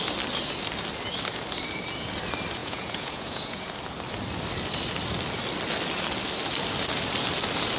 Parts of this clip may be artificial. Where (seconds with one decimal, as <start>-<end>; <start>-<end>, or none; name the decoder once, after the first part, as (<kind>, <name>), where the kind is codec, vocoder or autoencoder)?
2.6-3.7 (vocoder, Vocos)